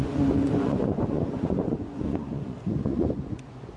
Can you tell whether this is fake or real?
fake